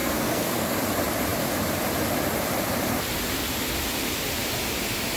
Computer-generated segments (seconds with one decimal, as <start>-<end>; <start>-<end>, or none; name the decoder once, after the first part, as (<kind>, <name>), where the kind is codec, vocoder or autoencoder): 0.0-0.7 (codec, SNAC)